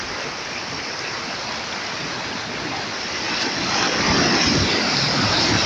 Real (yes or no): yes